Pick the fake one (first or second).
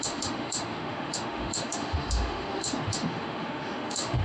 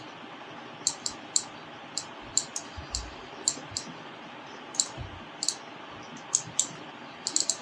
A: first